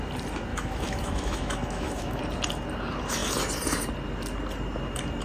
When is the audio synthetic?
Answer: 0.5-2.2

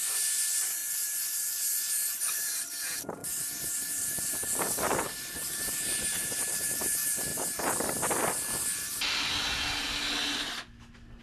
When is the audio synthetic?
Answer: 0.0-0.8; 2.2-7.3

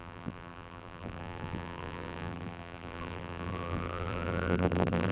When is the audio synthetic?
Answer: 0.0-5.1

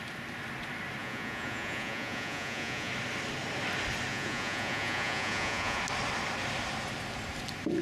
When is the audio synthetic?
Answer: 1.0-2.9; 4.1-5.8

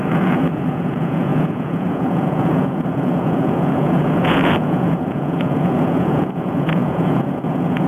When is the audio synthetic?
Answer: 0.0-7.9